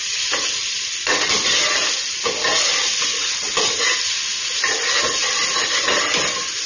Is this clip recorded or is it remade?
recorded